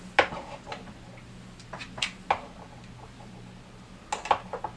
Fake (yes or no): no